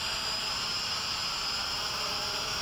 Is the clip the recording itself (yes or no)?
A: yes